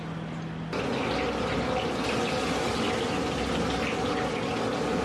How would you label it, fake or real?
real